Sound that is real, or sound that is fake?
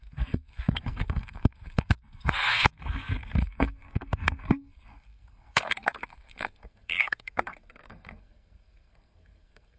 fake